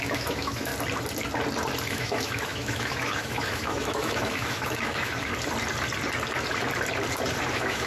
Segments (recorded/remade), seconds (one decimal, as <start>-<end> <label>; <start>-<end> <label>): 0.0-0.7 remade; 0.7-1.9 recorded; 1.9-5.3 remade; 5.3-7.5 recorded; 7.5-7.9 remade